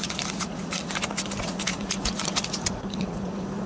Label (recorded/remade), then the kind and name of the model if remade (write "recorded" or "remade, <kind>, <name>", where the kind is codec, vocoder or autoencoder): remade, vocoder, Vocos